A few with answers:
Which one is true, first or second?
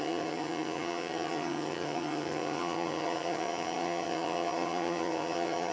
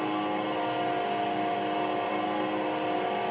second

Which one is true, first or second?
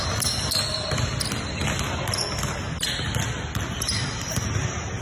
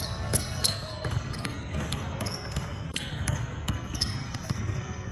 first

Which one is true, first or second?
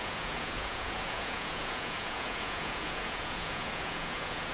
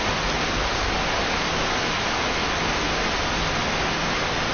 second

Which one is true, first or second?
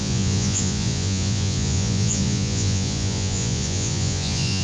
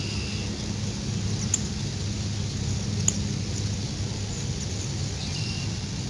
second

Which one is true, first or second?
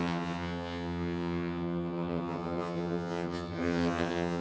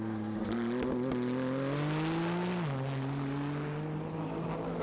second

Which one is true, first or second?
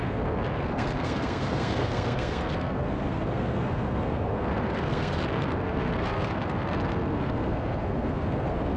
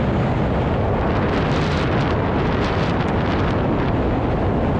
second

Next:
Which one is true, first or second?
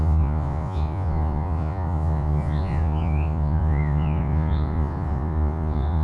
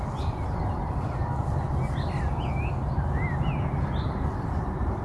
second